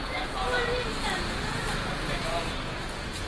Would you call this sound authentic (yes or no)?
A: no